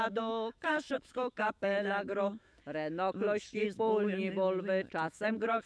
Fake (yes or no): yes